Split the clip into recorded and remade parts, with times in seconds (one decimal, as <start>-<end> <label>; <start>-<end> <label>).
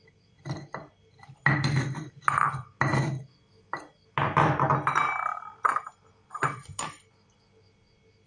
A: 0.0-2.9 remade; 2.9-6.1 recorded; 6.1-8.3 remade